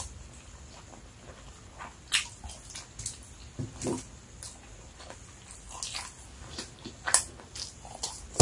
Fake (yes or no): no